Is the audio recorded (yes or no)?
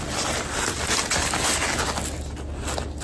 yes